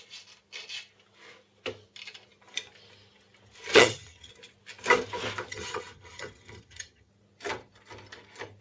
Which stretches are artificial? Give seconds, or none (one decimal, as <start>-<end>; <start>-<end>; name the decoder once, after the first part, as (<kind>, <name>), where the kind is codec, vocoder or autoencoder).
3.7-4.3 (vocoder, HiFi-GAN); 5.5-7.1